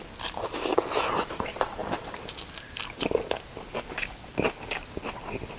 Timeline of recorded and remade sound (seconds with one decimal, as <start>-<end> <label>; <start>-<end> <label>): 0.0-5.6 recorded